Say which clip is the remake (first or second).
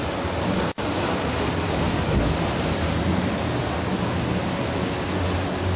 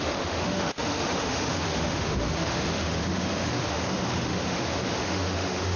second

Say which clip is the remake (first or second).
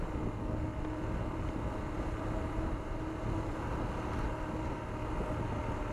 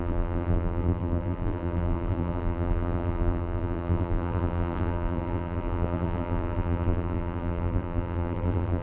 second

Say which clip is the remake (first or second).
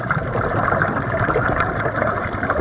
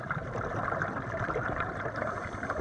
second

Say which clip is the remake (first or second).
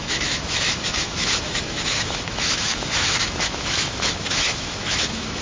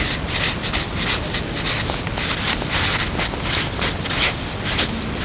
first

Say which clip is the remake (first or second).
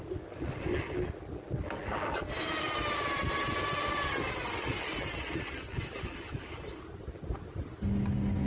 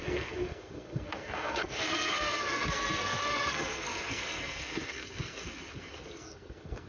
second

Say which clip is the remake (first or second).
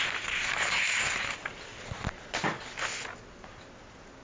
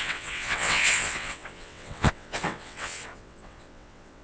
second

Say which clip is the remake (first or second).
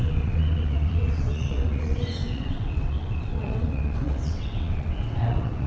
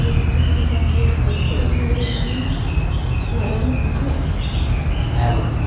first